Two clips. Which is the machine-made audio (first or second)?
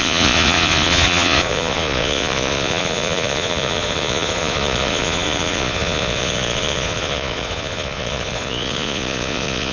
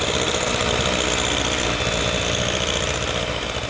first